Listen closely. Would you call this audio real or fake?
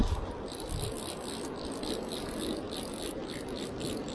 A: real